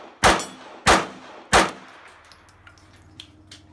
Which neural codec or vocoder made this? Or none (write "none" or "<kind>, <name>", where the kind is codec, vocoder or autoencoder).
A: none